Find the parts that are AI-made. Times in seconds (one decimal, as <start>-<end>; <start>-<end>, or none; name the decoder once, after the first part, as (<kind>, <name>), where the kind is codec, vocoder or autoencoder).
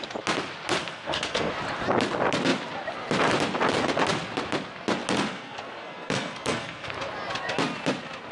0.8-1.5 (codec, SNAC); 5.3-6.9